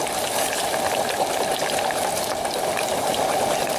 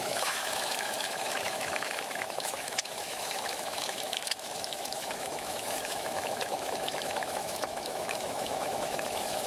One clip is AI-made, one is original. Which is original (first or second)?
first